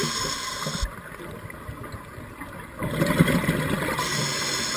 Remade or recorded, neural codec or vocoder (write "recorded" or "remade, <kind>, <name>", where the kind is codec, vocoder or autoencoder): recorded